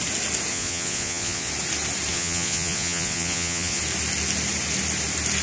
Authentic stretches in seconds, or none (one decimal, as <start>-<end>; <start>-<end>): 0.0-0.5; 1.5-2.1; 3.8-5.4